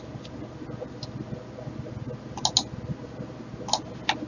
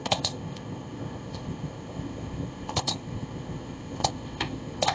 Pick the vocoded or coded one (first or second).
second